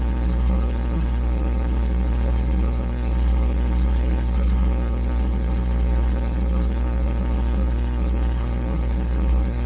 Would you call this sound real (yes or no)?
no